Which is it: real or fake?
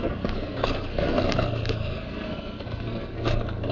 fake